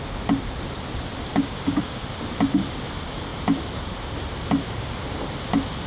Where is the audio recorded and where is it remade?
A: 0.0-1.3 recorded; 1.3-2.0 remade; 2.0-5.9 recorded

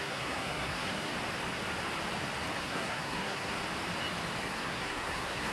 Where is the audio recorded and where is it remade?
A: 0.0-1.1 remade; 1.1-2.6 recorded; 2.6-3.6 remade; 3.6-4.4 recorded; 4.4-5.5 remade

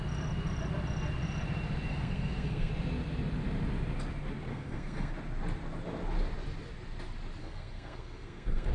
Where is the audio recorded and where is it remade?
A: 0.0-1.9 recorded; 1.9-2.7 remade; 2.7-4.5 recorded; 4.5-5.1 remade; 5.1-7.4 recorded; 7.4-8.7 remade

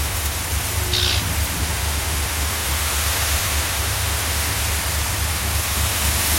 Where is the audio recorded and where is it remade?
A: 0.0-0.4 remade; 0.4-1.6 recorded; 1.6-4.6 remade; 4.6-5.3 recorded; 5.3-6.4 remade

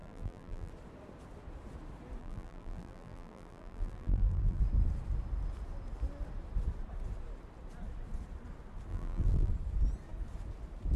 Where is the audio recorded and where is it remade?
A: 0.0-0.7 remade; 0.7-2.2 recorded; 2.2-4.6 remade; 4.6-8.9 recorded; 8.9-9.5 remade; 9.5-11.0 recorded